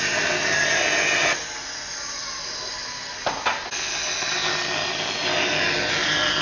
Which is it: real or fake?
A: real